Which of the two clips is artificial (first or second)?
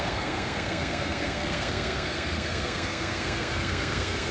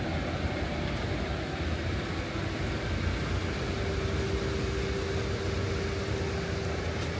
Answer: first